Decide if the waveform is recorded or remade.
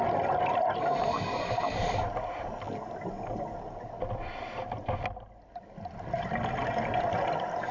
recorded